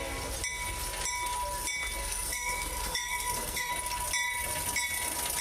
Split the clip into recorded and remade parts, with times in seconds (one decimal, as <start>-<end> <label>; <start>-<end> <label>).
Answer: 0.0-2.0 recorded; 2.0-3.7 remade; 3.7-5.4 recorded